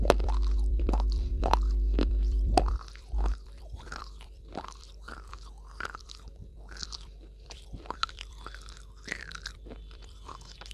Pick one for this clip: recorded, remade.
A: remade